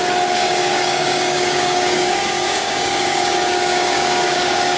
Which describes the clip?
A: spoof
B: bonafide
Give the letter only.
A